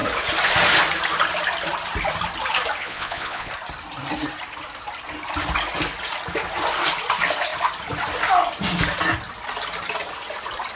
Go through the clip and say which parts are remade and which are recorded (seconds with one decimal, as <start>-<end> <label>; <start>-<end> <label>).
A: 0.0-2.8 recorded; 2.8-3.5 remade; 3.5-10.8 recorded

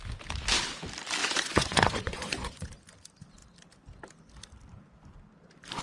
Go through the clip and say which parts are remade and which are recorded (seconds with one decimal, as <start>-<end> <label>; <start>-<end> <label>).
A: 0.0-1.2 recorded; 1.2-2.7 remade; 2.7-5.8 recorded